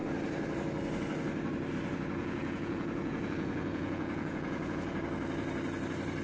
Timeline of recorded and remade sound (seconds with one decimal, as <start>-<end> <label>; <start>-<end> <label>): 0.0-2.2 recorded; 2.2-5.0 remade; 5.0-6.2 recorded